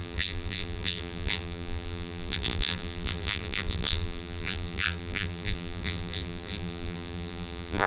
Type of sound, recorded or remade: remade